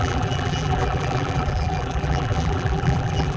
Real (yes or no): no